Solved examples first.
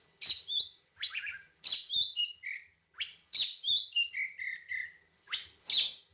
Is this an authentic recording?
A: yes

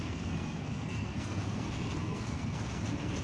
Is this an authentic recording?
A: no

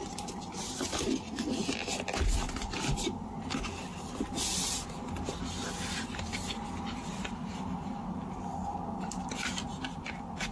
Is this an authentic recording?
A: yes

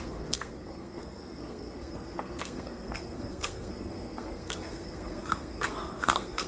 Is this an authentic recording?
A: no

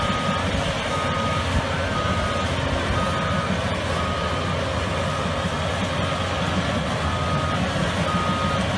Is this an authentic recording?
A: yes